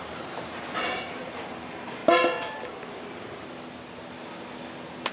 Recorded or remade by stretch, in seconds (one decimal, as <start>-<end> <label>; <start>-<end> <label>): 0.0-2.0 remade; 2.0-5.1 recorded